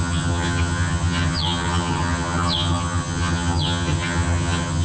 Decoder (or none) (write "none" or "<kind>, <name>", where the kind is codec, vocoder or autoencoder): vocoder, HiFi-GAN